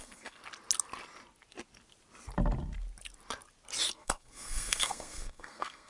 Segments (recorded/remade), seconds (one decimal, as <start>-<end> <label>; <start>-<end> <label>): 0.0-0.4 remade; 0.4-3.9 recorded; 3.9-5.9 remade